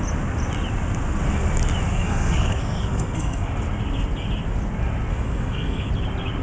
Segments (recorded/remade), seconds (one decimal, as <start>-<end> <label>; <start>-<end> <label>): 0.0-1.9 recorded; 1.9-3.5 remade; 3.5-5.1 recorded; 5.1-5.9 remade; 5.9-6.4 recorded